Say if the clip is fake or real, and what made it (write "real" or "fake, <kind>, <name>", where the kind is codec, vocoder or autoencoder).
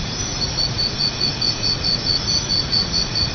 fake, vocoder, Vocos